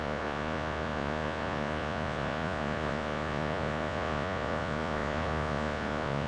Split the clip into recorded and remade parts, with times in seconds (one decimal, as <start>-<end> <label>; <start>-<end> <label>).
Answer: 0.0-6.3 remade